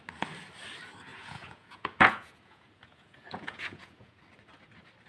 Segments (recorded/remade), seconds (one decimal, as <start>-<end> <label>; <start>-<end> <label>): 0.0-1.1 recorded; 1.1-4.2 remade; 4.2-5.1 recorded